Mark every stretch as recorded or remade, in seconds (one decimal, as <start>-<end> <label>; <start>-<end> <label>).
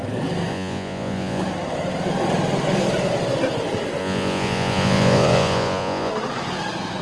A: 0.0-0.5 recorded; 0.5-1.4 remade; 1.4-4.0 recorded; 4.0-6.1 remade; 6.1-7.0 recorded